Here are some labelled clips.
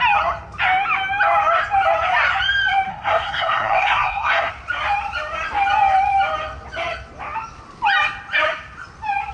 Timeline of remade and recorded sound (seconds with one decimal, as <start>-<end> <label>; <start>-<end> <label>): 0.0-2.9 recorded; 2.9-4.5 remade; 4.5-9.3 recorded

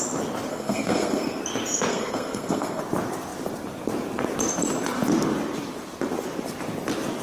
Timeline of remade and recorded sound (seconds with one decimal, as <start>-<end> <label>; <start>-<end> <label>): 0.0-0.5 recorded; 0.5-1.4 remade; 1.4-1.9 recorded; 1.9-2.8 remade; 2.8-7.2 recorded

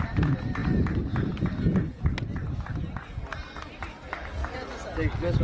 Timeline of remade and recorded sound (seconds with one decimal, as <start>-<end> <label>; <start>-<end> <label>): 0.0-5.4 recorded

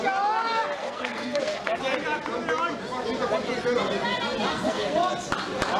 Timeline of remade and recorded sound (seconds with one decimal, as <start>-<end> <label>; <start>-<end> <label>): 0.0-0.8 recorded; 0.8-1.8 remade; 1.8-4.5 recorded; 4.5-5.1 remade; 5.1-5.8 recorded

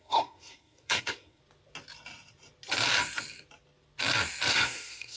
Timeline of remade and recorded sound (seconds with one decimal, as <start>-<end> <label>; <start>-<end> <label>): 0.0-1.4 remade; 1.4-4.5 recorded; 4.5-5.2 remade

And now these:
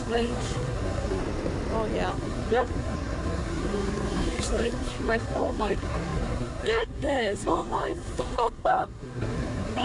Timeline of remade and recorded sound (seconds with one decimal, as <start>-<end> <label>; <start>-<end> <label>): 0.0-1.2 remade; 1.2-2.1 recorded; 2.1-9.8 remade

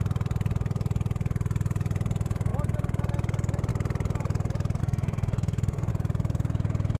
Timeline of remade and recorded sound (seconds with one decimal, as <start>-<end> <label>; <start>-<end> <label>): 0.0-4.8 recorded; 4.8-5.9 remade; 5.9-7.0 recorded